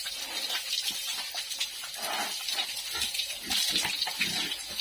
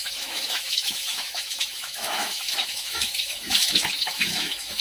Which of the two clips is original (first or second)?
first